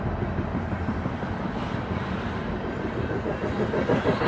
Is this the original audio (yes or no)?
yes